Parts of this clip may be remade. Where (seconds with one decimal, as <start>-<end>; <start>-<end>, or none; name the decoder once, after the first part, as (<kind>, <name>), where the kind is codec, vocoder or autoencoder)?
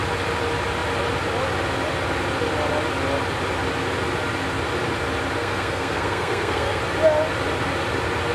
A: 5.4-6.8 (codec, SNAC)